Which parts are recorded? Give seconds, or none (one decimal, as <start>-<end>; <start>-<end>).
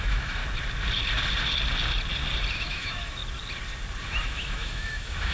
0.4-2.5; 3.2-4.0